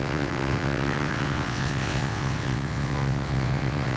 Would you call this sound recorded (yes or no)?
no